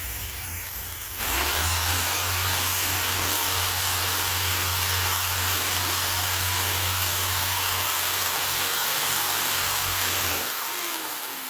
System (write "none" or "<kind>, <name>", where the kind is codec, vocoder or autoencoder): codec, DAC